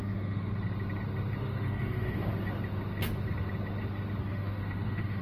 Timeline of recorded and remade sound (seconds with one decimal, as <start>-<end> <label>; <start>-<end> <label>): 0.0-0.5 remade; 0.5-1.4 recorded; 1.4-2.3 remade; 2.3-4.2 recorded; 4.2-5.2 remade